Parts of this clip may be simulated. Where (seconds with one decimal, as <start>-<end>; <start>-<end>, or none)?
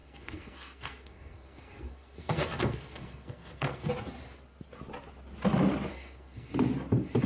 0.0-3.9; 5.9-6.5